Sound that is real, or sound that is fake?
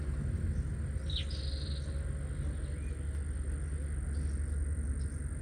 real